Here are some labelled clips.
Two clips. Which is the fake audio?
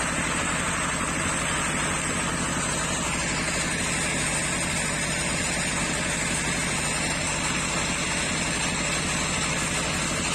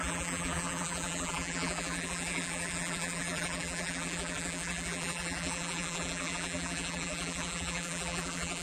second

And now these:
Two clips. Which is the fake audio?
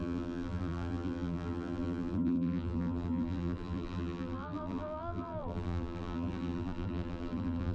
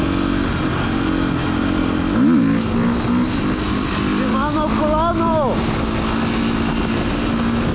first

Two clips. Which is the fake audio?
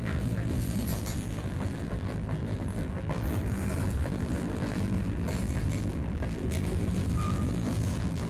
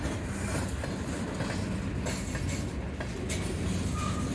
first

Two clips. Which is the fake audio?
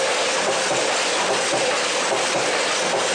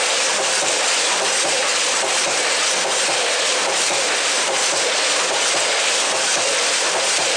second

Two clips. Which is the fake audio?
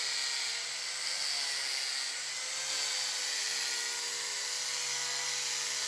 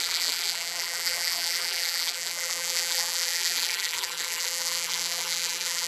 second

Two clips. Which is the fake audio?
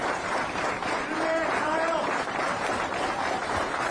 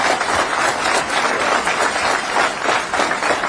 first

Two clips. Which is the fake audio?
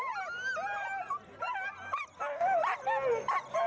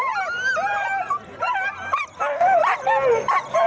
second